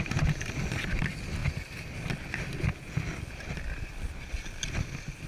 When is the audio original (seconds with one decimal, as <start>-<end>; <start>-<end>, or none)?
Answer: 0.0-5.3